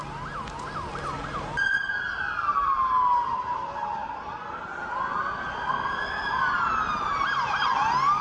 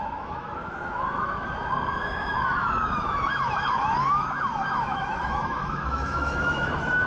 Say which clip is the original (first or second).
first